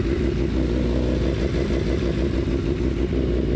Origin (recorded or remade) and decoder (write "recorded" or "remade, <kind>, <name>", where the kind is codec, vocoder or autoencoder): recorded